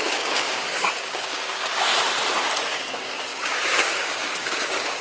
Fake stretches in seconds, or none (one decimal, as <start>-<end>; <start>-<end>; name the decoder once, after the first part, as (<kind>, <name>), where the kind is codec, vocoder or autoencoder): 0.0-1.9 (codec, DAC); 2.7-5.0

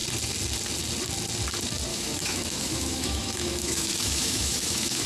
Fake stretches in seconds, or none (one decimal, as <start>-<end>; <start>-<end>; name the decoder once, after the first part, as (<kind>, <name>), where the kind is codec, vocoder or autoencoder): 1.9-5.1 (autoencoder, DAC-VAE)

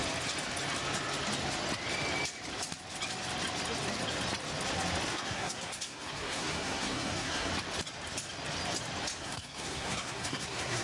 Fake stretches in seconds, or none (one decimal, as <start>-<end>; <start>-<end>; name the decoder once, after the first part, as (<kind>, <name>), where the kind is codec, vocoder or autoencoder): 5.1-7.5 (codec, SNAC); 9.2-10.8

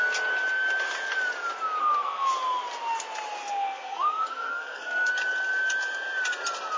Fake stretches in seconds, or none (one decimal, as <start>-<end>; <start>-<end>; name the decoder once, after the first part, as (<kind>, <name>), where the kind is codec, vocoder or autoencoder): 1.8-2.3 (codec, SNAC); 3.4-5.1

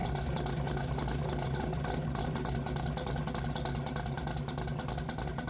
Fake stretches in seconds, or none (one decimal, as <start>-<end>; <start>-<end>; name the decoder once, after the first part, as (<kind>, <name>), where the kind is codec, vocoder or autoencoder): none

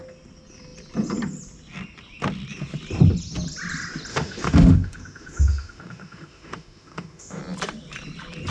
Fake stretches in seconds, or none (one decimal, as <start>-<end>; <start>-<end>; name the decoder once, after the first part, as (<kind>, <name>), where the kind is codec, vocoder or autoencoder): 4.1-7.4 (autoencoder, DAC-VAE)

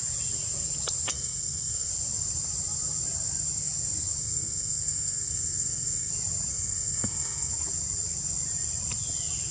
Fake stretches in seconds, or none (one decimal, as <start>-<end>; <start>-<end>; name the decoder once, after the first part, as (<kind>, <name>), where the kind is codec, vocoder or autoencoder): 1.1-1.9 (codec, SNAC); 4.2-6.1; 6.5-7.5

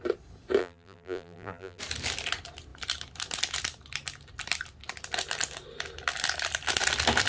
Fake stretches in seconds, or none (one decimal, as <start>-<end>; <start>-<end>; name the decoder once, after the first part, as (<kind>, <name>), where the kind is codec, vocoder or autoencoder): 0.6-1.8 (vocoder, BigVGAN v2)